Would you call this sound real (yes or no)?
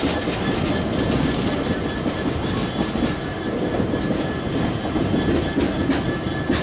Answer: yes